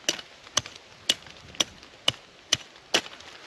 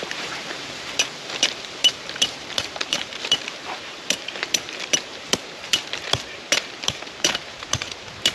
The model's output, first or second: second